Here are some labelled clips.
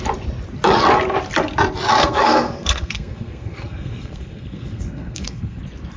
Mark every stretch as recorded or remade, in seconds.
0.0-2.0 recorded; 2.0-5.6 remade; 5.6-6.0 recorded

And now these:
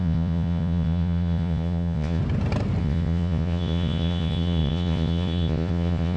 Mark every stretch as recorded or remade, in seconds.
0.0-2.2 remade; 2.2-2.8 recorded; 2.8-6.2 remade

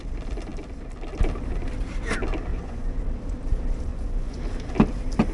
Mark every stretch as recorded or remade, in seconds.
0.0-2.5 recorded; 2.5-3.0 remade; 3.0-3.9 recorded; 3.9-4.4 remade; 4.4-5.3 recorded